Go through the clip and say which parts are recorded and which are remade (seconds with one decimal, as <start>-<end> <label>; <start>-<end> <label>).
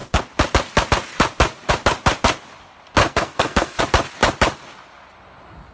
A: 0.0-3.0 recorded; 3.0-3.8 remade; 3.8-5.7 recorded